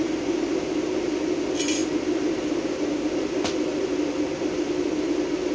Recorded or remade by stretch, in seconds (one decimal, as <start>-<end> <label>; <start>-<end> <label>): 0.0-5.5 recorded